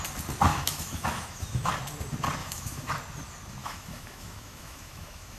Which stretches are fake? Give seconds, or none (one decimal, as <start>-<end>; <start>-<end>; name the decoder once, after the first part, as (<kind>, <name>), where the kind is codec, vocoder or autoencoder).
0.5-1.7 (autoencoder, DAC-VAE); 2.4-2.9; 3.6-5.4